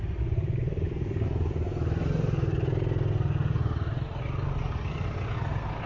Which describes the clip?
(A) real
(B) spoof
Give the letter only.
A